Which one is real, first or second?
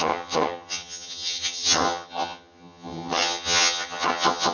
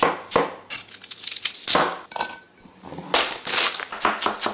second